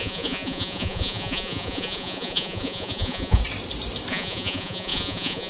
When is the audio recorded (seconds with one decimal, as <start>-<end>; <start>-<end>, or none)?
3.4-4.1